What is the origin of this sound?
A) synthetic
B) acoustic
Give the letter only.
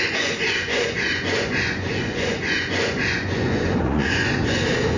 A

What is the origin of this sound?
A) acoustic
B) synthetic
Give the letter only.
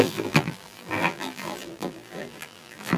B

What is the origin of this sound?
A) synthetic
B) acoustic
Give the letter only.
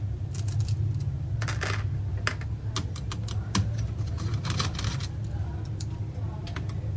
B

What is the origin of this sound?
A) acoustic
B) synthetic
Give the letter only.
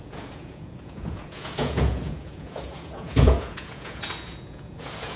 B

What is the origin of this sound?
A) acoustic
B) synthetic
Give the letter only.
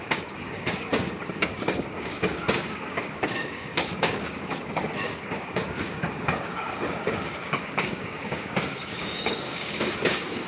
B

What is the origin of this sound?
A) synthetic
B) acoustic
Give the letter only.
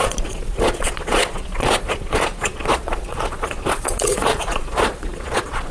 A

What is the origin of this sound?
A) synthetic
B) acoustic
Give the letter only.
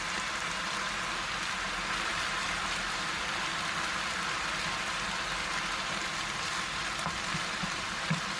B